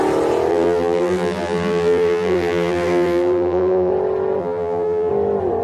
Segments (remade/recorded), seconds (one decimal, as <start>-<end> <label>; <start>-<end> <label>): 0.0-0.5 recorded; 0.5-3.9 remade; 3.9-4.4 recorded; 4.4-5.1 remade; 5.1-5.6 recorded